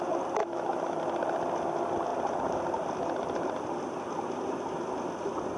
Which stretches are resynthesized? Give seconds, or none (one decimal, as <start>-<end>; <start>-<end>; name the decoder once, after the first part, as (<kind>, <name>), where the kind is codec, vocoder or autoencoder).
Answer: 0.4-1.0 (autoencoder, DAC-VAE)